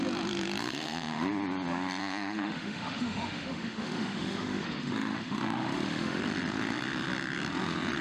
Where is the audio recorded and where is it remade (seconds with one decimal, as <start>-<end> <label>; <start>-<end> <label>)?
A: 0.0-0.6 recorded; 0.6-1.3 remade; 1.3-2.0 recorded; 2.0-6.2 remade; 6.2-8.0 recorded